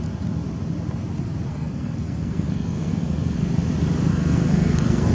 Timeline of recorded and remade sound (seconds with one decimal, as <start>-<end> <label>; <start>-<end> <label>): 0.0-1.5 recorded; 1.5-3.5 remade; 3.5-4.1 recorded; 4.1-5.1 remade